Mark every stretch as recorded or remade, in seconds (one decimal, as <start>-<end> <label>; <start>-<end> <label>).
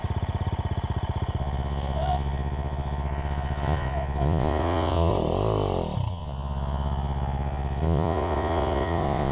0.0-1.4 recorded; 1.4-5.1 remade; 5.1-6.1 recorded; 6.1-9.3 remade